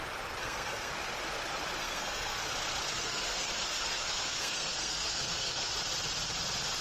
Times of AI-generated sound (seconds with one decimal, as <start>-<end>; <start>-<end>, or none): 0.4-0.9; 1.8-2.4; 2.9-5.7